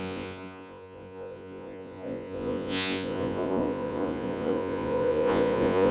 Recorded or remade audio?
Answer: remade